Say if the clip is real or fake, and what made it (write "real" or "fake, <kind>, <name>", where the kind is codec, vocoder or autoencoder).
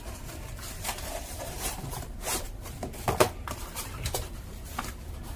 fake, vocoder, BigVGAN v2